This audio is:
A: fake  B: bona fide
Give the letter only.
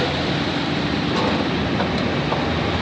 B